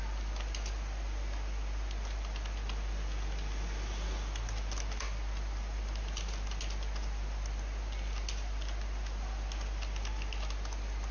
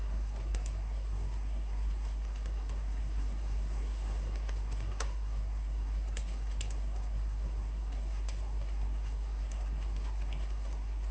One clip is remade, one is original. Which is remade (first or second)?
second